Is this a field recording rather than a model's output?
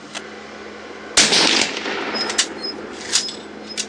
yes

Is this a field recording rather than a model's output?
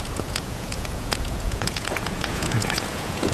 no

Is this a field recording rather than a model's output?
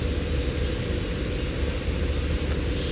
yes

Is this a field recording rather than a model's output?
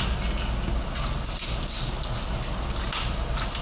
yes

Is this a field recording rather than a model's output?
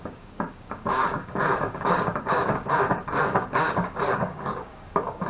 no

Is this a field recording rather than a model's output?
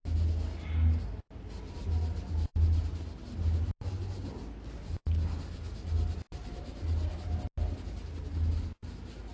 yes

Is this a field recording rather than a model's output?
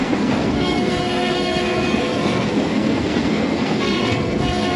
no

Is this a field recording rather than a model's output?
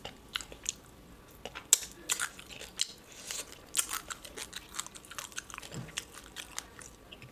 yes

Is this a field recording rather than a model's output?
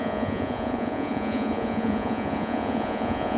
no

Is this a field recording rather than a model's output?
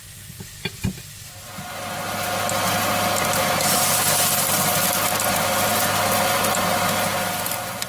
yes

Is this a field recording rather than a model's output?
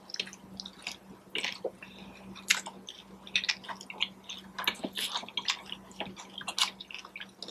yes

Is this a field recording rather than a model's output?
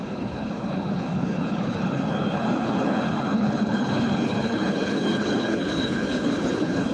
no